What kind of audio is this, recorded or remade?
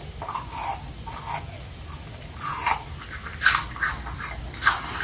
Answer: recorded